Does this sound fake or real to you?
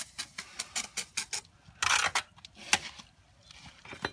real